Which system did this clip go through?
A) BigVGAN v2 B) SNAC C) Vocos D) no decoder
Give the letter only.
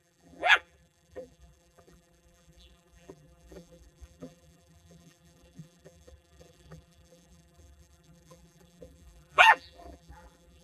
A